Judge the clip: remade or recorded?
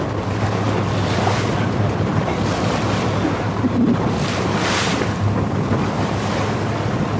recorded